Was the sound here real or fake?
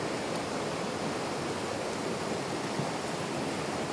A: real